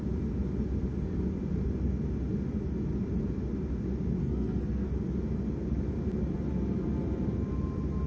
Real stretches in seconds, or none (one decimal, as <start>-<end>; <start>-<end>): 0.0-4.2; 4.9-8.1